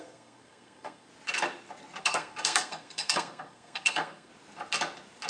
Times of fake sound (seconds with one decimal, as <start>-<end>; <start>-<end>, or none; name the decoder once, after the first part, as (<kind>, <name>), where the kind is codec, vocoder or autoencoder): 0.0-1.1 (codec, SNAC); 2.0-4.3